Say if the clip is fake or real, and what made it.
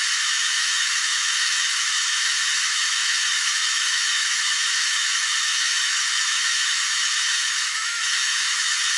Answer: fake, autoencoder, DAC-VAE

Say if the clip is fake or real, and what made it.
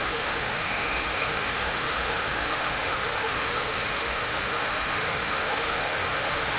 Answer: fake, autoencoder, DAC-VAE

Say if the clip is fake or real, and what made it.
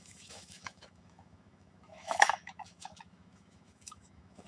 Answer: fake, autoencoder, DAC-VAE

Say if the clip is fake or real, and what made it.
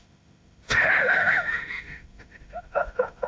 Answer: fake, autoencoder, DAC-VAE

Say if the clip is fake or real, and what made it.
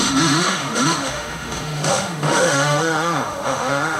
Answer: fake, autoencoder, DAC-VAE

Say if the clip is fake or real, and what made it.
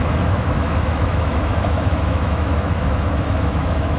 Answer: fake, autoencoder, DAC-VAE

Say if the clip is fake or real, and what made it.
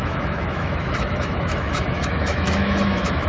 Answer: fake, autoencoder, DAC-VAE